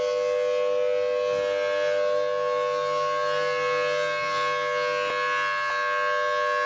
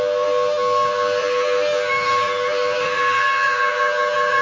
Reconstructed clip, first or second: second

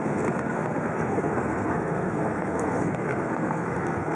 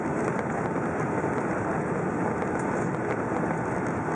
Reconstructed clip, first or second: first